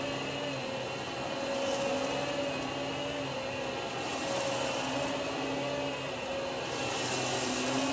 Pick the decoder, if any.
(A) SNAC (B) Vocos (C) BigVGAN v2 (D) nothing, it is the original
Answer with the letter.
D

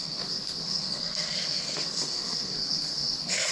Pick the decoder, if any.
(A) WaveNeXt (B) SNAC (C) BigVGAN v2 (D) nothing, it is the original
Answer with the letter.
B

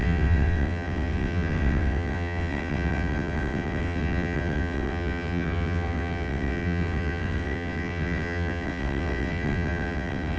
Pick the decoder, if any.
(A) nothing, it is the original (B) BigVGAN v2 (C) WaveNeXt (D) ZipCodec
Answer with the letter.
C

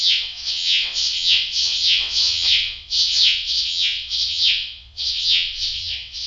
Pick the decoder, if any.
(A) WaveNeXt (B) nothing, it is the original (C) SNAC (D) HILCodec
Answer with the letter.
A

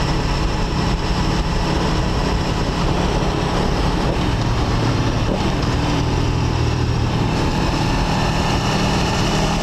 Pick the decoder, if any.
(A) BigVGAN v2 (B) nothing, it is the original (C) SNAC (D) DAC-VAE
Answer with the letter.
A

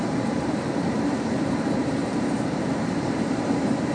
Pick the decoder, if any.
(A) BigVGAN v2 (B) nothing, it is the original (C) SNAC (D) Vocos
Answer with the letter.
A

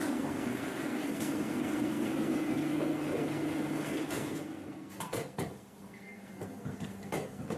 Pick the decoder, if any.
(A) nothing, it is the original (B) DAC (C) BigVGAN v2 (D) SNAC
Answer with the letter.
D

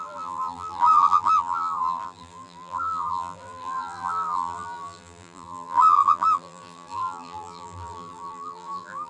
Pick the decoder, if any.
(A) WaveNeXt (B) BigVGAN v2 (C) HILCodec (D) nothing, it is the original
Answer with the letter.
B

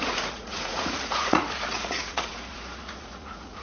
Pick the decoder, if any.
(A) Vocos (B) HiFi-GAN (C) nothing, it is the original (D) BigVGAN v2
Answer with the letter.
A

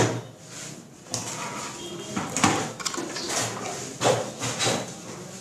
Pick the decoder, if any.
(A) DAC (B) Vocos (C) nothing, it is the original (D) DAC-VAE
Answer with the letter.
C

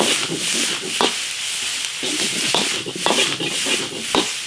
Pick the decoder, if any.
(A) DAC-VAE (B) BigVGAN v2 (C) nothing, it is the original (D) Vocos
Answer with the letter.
C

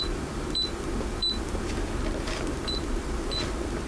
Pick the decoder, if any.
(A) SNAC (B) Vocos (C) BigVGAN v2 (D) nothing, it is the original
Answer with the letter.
C